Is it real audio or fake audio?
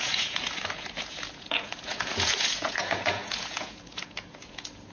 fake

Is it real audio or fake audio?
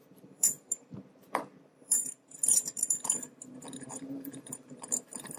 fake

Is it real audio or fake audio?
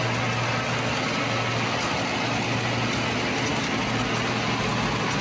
real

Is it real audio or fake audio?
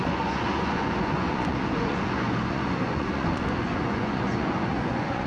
fake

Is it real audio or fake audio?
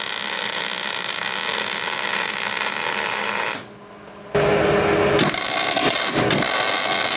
real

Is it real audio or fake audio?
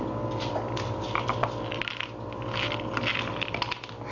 real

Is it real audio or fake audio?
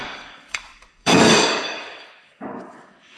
fake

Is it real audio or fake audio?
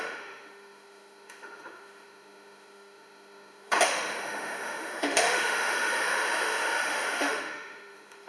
fake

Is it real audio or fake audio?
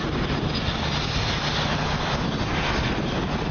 real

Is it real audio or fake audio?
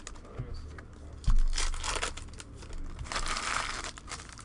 real